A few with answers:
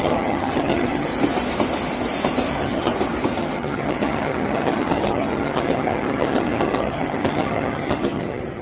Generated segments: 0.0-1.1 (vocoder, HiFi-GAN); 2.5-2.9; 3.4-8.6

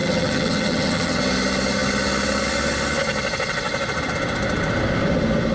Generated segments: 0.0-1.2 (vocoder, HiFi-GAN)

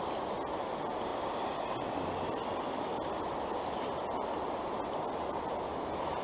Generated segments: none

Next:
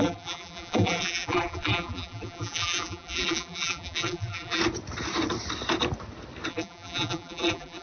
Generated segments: 0.0-4.6 (vocoder, BigVGAN v2); 6.5-7.8

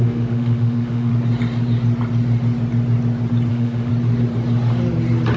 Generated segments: 0.0-1.1 (autoencoder, DAC-VAE); 3.5-3.9

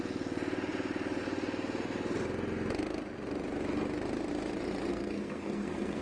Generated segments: 4.9-6.0 (codec, SNAC)

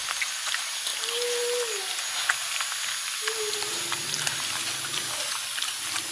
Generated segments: none

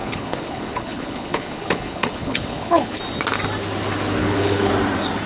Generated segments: 0.0-3.0 (codec, HILCodec); 4.2-4.7